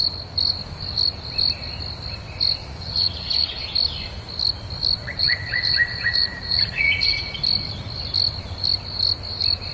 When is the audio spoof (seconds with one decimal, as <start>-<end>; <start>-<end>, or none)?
2.6-3.6; 5.0-7.3